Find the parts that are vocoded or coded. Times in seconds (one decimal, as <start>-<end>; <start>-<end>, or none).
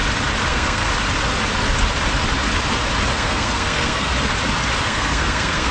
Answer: 0.5-0.9; 3.1-4.1; 4.8-5.7